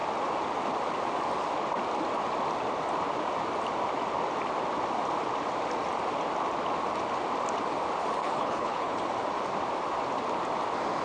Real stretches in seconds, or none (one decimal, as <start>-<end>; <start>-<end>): 0.0-8.2; 9.0-11.0